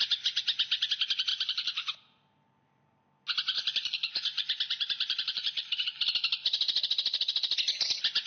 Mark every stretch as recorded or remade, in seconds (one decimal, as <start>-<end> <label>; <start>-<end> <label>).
0.0-1.3 recorded; 1.3-3.0 remade; 3.0-3.5 recorded; 3.5-6.0 remade; 6.0-8.3 recorded